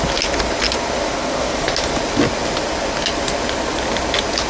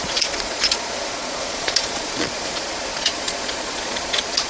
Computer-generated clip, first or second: second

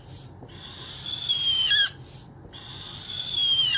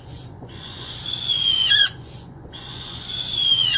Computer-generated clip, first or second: second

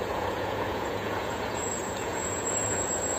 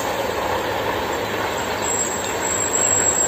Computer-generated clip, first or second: first